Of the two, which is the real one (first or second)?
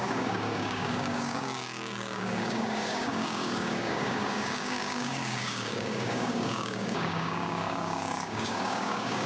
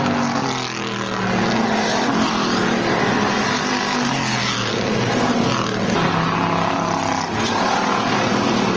second